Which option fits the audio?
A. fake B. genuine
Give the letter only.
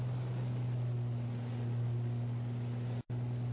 B